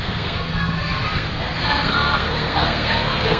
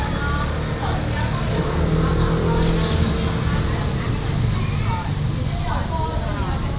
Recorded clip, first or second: second